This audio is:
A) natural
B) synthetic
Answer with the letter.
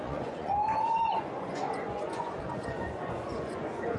B